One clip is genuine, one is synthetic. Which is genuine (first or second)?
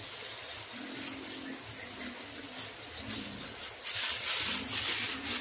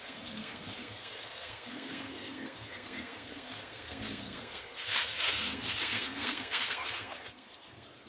first